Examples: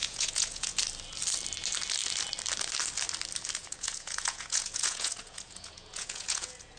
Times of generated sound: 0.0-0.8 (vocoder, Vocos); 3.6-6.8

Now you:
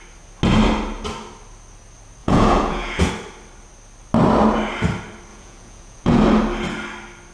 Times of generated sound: 2.2-3.1 (vocoder, Vocos); 5.3-6.2

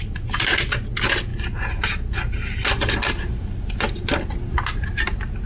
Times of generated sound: none

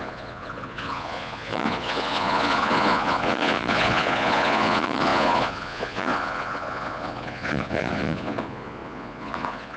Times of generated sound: 0.0-9.8 (vocoder, Vocos)

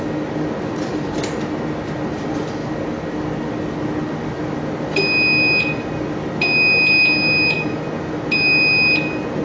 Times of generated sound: none